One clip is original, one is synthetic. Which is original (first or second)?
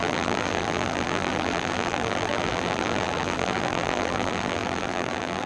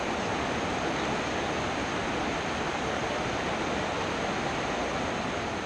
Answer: second